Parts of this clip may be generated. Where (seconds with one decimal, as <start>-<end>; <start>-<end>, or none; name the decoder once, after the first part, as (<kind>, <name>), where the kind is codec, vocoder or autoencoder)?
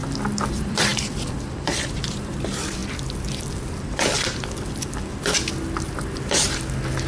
0.5-2.8 (vocoder, BigVGAN v2)